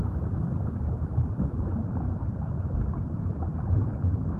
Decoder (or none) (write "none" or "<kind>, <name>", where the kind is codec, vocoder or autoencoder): none